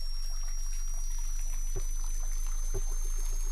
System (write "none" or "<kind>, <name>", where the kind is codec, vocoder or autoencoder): none